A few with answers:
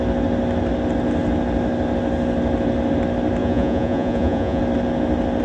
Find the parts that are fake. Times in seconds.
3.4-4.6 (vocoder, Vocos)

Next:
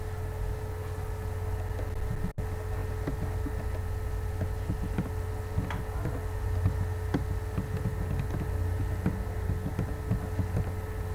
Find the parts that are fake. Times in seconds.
none

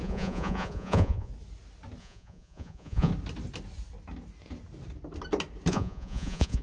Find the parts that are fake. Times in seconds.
0.0-1.3 (vocoder, Vocos); 2.0-3.1; 5.7-6.6

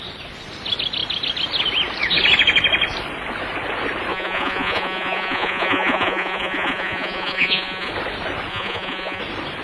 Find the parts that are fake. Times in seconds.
4.1-7.9 (vocoder, Vocos); 8.5-9.2

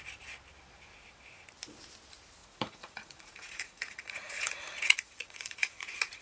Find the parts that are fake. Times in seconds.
2.4-6.2 (vocoder, Vocos)

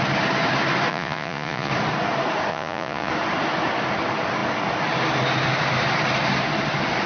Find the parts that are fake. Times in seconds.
0.9-1.7 (vocoder, Vocos); 2.5-3.1

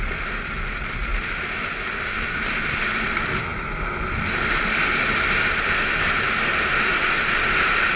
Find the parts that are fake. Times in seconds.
none